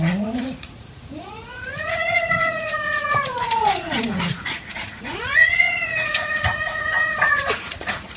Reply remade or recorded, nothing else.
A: remade